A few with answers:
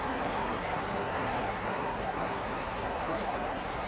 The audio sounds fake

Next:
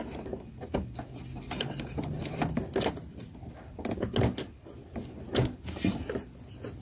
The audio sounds real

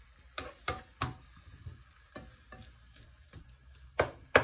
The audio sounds real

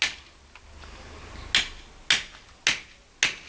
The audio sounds real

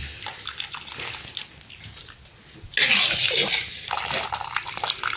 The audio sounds real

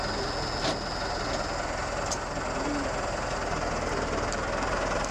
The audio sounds real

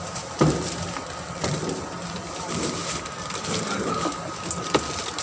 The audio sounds real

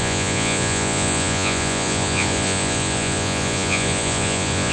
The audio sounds fake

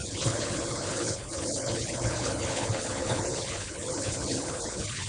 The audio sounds fake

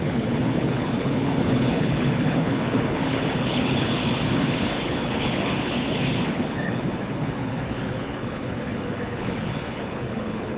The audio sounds fake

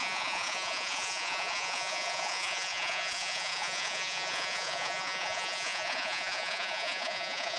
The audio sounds fake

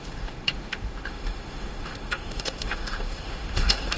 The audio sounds fake